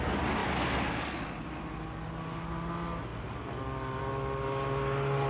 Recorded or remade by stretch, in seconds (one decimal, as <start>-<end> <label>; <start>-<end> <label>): 0.0-5.3 recorded